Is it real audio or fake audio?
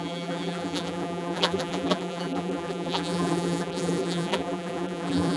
fake